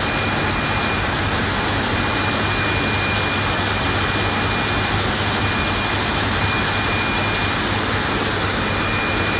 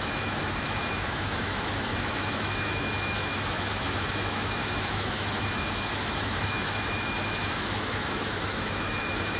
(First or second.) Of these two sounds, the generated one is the second